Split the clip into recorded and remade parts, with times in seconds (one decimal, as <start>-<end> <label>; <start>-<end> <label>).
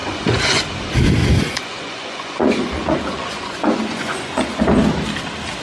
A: 0.0-0.6 remade; 0.6-1.2 recorded; 1.2-4.6 remade; 4.6-5.6 recorded